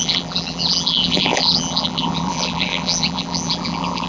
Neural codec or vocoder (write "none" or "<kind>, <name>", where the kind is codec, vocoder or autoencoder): vocoder, BigVGAN v2